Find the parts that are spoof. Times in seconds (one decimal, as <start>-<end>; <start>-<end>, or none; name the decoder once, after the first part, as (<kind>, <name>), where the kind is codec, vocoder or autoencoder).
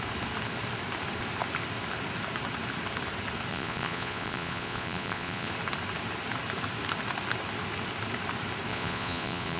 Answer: 3.5-5.5 (vocoder, Vocos); 8.7-9.6